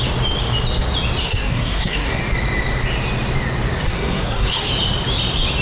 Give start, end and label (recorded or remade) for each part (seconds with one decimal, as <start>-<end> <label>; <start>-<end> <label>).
0.0-1.2 recorded; 1.2-2.2 remade; 2.2-3.8 recorded; 3.8-4.7 remade; 4.7-5.6 recorded